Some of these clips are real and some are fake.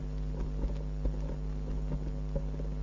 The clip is real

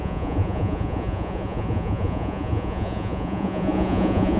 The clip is fake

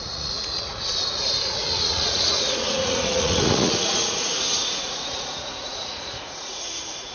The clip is fake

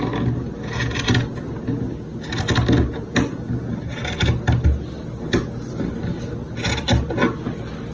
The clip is real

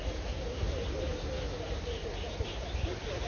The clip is real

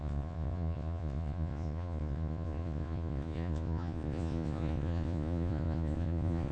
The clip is fake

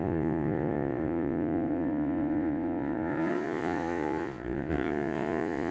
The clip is fake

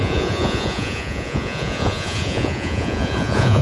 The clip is fake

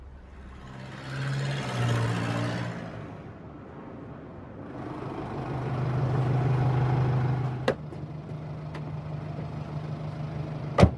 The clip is real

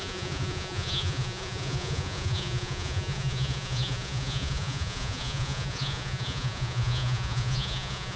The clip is fake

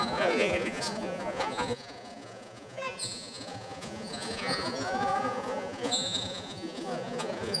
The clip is fake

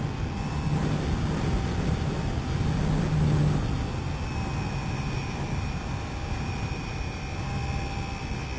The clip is real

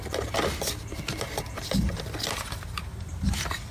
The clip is real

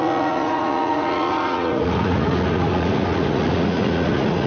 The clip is fake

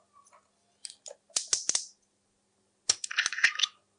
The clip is real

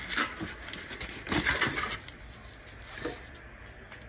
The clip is real